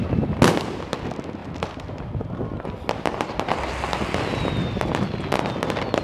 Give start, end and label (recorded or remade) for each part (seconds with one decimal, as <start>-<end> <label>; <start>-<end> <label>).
0.0-1.4 recorded; 1.4-2.3 remade; 2.3-6.0 recorded